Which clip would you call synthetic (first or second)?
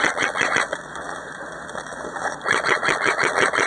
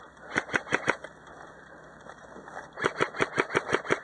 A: first